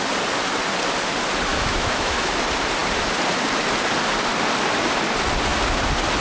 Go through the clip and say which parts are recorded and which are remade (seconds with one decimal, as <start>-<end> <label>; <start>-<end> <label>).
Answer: 0.0-1.5 recorded; 1.5-2.3 remade; 2.3-6.2 recorded